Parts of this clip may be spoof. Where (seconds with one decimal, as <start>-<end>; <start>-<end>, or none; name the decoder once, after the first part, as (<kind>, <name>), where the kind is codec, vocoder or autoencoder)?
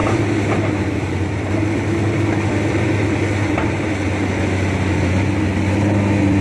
0.0-3.8 (vocoder, BigVGAN v2)